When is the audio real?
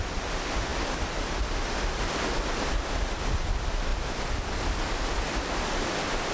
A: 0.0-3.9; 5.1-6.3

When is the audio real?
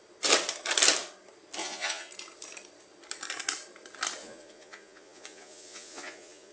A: 0.0-1.6; 2.1-4.2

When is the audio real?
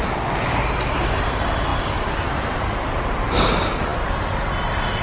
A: 0.0-5.0